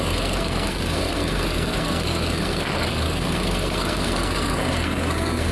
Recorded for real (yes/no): no